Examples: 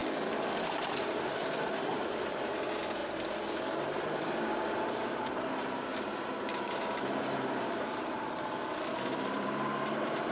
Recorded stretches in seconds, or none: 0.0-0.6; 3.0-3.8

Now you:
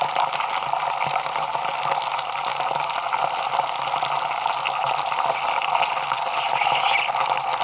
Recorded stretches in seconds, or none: 0.0-7.6

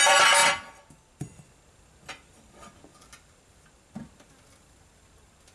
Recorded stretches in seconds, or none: 0.0-5.5

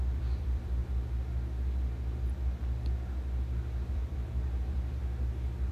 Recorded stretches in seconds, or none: 0.8-3.9; 5.0-5.7

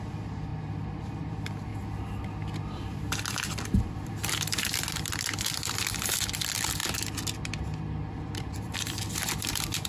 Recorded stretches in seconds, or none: 0.5-1.0; 1.7-2.7; 4.2-5.2; 6.8-8.2